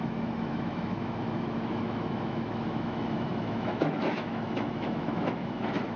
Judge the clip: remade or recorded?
remade